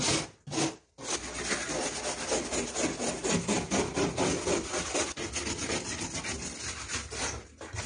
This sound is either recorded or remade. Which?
recorded